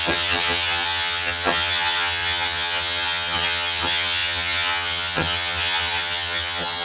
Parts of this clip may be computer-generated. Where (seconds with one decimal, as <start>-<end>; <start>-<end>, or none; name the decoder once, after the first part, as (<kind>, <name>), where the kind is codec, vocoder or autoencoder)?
0.0-6.8 (vocoder, HiFi-GAN)